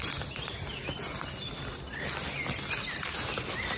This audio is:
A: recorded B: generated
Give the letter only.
A